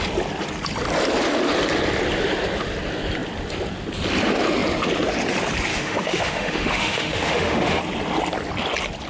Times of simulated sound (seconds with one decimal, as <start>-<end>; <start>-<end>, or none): 5.7-7.8